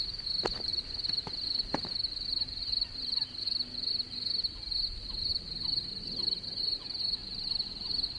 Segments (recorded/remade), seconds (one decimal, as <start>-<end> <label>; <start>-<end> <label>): 0.0-0.7 recorded; 0.7-3.4 remade; 3.4-7.2 recorded; 7.2-8.2 remade